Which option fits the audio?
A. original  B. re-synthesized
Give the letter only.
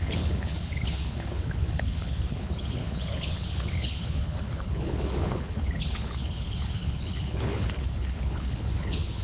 B